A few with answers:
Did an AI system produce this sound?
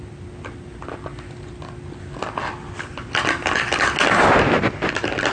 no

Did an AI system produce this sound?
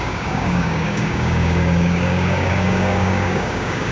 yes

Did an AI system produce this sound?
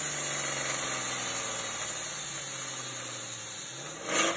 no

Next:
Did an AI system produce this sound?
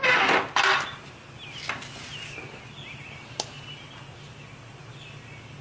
no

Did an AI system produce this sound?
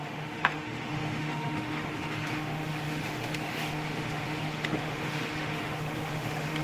yes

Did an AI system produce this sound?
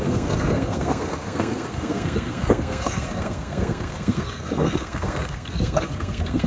yes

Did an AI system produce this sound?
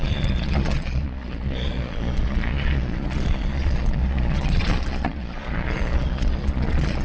yes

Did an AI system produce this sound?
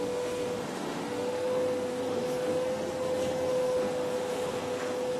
yes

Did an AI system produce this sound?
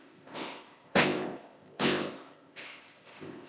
yes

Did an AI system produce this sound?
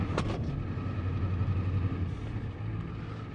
no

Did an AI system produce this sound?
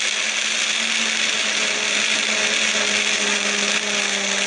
no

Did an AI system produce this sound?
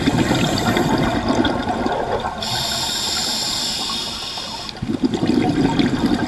no